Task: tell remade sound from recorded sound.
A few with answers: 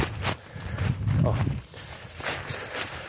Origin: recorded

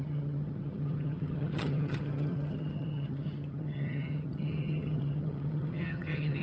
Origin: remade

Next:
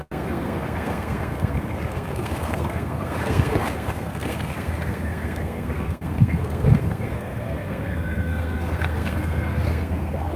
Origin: remade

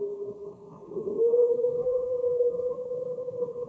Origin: remade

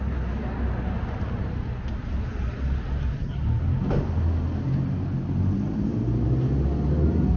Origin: recorded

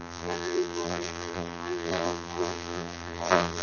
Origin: remade